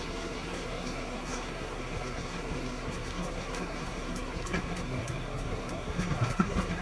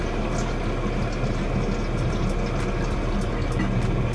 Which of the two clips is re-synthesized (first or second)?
first